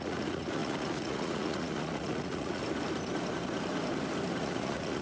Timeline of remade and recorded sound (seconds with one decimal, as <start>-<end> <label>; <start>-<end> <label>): 0.0-2.6 remade; 2.6-4.4 recorded; 4.4-5.0 remade